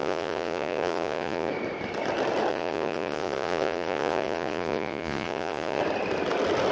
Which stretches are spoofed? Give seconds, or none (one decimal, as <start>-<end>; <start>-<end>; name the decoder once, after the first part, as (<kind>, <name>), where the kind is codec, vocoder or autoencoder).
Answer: 0.0-1.5 (vocoder, Vocos); 2.5-5.8